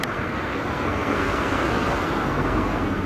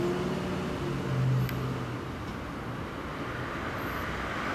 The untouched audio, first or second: second